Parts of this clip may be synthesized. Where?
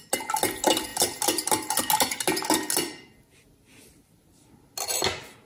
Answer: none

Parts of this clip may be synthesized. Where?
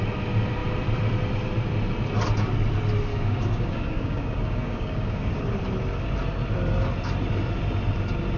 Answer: 3.1-5.4 (codec, DAC)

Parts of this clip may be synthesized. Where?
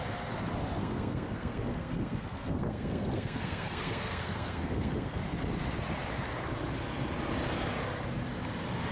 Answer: 0.8-5.2 (codec, SNAC)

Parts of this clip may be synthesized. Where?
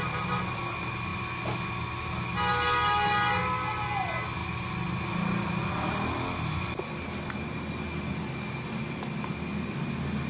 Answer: none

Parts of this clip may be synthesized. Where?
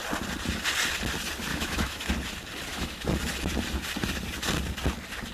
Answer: 1.5-2.1 (autoencoder, DAC-VAE); 2.7-3.2